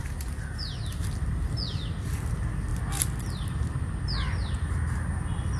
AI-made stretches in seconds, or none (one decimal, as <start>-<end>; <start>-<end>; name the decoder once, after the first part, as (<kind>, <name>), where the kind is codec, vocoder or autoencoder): none